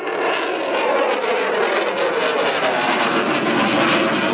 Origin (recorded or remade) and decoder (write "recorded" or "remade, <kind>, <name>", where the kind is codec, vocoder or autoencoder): recorded